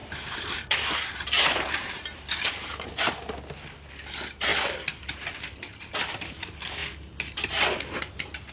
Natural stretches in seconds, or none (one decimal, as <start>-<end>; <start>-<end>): 2.9-8.5